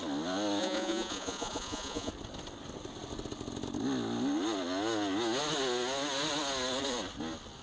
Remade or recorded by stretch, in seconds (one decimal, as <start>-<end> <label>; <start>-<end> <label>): 0.0-0.6 recorded; 0.6-2.1 remade; 2.1-7.6 recorded